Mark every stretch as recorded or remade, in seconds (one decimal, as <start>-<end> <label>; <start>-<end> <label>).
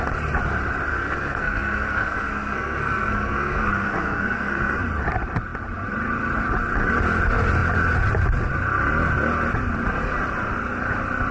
0.0-0.9 recorded; 0.9-4.8 remade; 4.8-11.3 recorded